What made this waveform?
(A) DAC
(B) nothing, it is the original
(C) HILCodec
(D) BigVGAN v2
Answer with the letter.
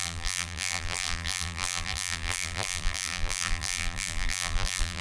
D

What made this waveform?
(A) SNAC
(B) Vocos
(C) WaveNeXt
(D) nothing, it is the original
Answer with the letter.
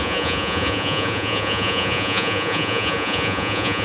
B